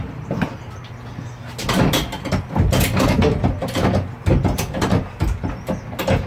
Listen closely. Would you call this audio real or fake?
real